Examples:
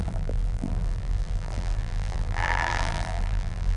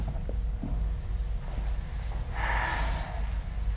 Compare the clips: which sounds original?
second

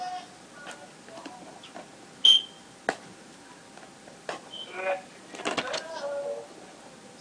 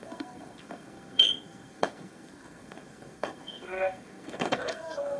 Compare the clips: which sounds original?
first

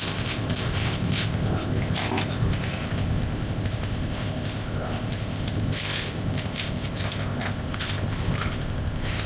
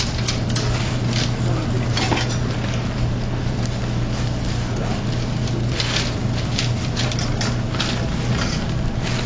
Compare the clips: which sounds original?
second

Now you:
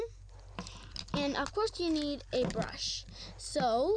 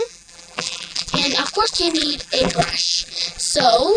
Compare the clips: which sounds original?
first